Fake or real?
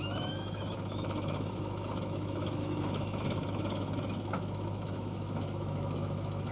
fake